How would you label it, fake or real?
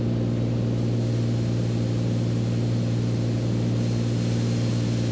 real